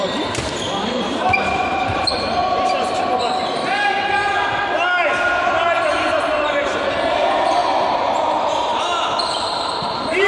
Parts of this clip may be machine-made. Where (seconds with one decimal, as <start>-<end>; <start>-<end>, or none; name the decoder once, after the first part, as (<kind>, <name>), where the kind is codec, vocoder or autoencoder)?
0.0-2.4 (vocoder, BigVGAN v2); 5.5-10.3